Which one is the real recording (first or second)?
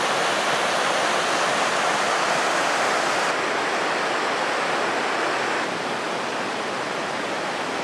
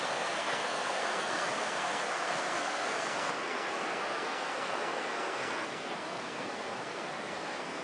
first